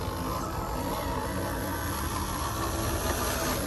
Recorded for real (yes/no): yes